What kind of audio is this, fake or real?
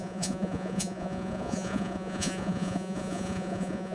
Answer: fake